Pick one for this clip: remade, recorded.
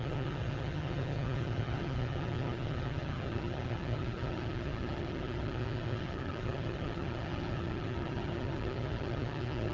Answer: remade